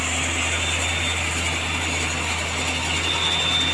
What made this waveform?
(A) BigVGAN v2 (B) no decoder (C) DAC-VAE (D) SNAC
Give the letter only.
B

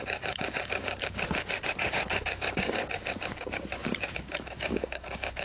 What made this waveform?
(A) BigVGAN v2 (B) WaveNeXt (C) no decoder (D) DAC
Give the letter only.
D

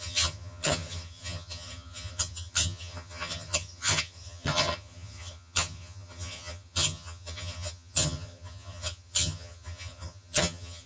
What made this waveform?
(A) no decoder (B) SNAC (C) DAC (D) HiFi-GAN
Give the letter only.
D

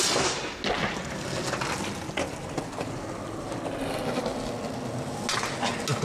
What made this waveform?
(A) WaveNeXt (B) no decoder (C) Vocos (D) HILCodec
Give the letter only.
B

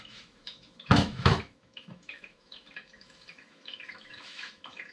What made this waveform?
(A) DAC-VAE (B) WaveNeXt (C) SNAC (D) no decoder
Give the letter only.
A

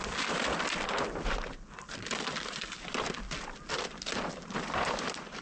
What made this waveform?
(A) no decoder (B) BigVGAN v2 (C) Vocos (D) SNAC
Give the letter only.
B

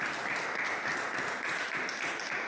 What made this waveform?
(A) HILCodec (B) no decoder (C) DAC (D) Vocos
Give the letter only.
B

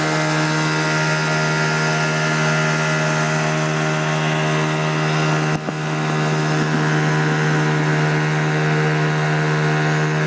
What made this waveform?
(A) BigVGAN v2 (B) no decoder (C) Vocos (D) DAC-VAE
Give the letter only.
B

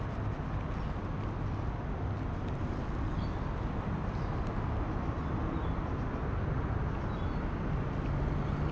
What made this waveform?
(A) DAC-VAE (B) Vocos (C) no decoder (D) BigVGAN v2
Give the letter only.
C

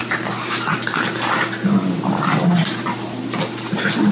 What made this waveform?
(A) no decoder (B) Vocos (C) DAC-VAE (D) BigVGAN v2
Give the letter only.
A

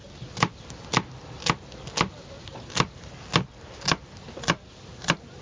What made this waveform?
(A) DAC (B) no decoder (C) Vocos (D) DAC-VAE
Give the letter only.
B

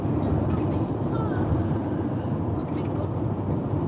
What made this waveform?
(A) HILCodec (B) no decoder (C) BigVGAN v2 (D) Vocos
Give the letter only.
B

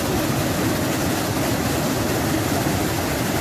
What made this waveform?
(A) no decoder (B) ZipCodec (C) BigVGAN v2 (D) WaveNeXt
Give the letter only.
A